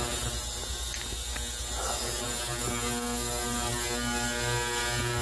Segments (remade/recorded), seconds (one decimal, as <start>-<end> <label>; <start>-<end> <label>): 0.0-5.2 recorded